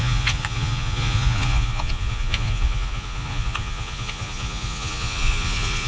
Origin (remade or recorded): remade